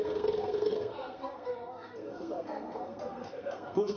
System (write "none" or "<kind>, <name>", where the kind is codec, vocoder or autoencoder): codec, SNAC